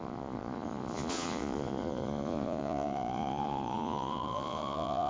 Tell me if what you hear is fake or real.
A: fake